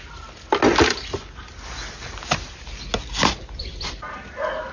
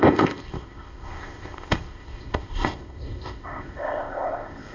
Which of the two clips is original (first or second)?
first